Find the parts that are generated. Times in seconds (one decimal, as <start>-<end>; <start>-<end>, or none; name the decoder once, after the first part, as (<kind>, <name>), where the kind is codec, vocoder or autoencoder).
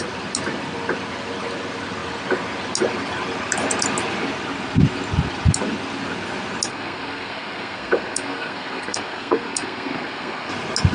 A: 6.7-10.5 (codec, SNAC)